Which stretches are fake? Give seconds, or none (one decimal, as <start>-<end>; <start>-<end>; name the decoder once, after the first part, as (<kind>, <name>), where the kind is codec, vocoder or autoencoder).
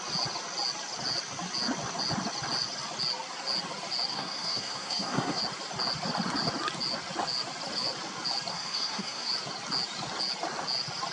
4.1-5.4 (codec, SNAC); 8.5-9.3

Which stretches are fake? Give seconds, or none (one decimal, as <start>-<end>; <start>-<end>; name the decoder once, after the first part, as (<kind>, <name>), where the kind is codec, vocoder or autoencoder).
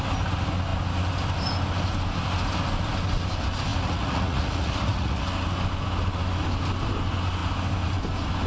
3.7-5.2 (vocoder, Vocos)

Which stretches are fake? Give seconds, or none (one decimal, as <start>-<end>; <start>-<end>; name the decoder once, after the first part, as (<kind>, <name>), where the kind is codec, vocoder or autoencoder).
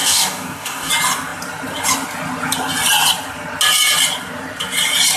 0.0-0.9 (codec, DAC)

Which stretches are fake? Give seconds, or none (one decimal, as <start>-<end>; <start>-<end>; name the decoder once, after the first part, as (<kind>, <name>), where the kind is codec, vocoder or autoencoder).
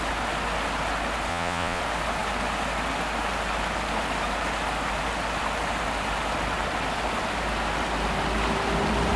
1.3-1.8 (vocoder, Vocos)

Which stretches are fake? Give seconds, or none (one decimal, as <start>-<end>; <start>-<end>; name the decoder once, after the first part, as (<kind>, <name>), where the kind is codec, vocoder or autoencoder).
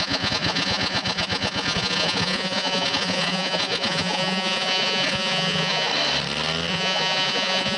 0.0-5.9 (vocoder, Vocos); 6.7-7.8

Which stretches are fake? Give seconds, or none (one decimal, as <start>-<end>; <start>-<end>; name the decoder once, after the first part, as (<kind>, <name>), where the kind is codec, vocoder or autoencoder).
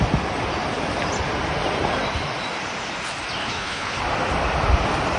3.4-4.0 (codec, HILCodec)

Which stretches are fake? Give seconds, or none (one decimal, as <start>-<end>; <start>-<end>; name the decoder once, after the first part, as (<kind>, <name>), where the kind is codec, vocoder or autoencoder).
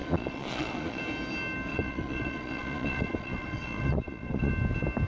0.0-1.0 (vocoder, Vocos); 1.7-4.5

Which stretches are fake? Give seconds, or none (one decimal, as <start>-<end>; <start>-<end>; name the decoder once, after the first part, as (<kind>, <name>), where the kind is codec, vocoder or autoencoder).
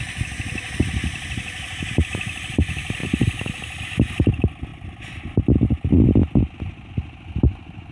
none